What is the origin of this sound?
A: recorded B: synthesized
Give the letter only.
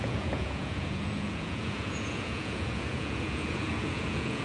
B